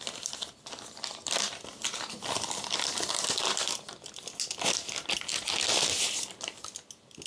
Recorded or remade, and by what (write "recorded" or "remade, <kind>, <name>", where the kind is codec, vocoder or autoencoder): recorded